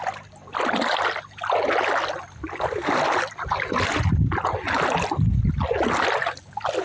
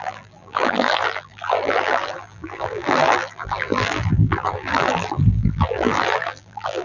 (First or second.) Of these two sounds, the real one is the first